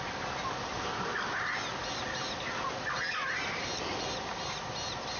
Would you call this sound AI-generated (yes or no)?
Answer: no